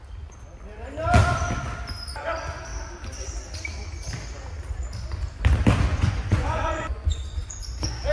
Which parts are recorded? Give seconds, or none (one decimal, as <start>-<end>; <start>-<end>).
0.0-5.9